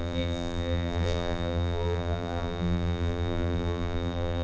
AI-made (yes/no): yes